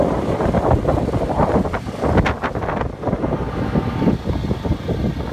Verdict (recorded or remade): recorded